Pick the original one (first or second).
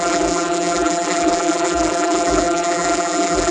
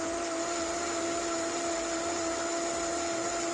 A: second